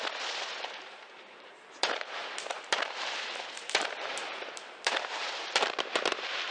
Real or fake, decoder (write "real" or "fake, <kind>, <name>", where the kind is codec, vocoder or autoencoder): fake, vocoder, BigVGAN v2